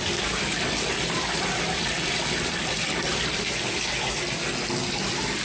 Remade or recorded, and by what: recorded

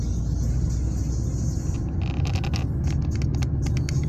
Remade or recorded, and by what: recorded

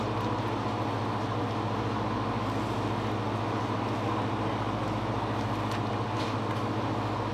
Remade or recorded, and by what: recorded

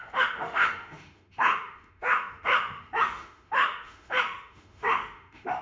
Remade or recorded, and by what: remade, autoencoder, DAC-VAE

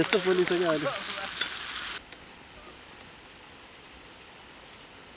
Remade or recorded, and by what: recorded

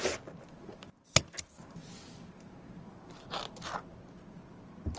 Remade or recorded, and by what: recorded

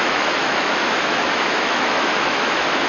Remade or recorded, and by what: remade, autoencoder, DAC-VAE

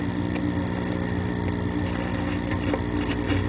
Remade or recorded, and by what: recorded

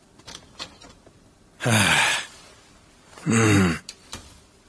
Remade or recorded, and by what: remade, vocoder, BigVGAN v2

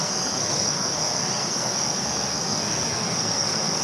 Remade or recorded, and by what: remade, codec, SNAC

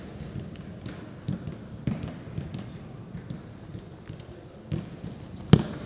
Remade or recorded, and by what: recorded